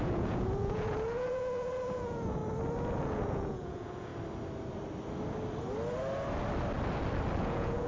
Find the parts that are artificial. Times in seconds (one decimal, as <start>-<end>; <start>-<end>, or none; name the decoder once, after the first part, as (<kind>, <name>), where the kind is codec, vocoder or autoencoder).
0.0-2.4 (vocoder, Vocos); 3.0-4.1; 7.4-7.9